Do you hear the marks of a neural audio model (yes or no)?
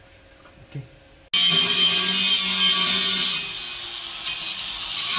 no